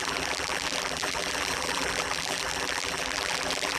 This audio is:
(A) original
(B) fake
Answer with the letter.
B